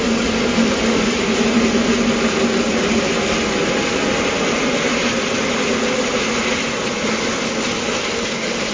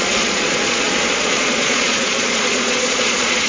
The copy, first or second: second